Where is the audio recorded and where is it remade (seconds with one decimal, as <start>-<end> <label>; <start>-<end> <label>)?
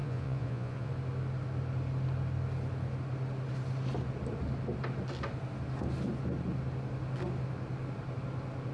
0.0-0.9 remade; 0.9-8.7 recorded